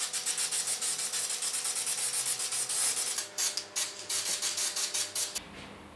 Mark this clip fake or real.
real